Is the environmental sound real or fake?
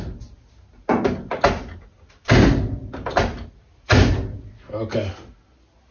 real